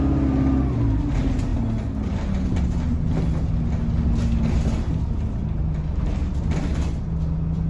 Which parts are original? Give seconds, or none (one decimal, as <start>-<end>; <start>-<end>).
0.0-7.7